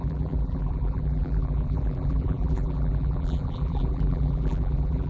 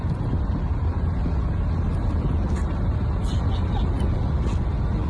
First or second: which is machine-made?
first